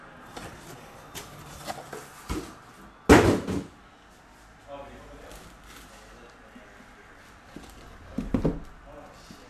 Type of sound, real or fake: real